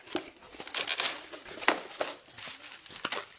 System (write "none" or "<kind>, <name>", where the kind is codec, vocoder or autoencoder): none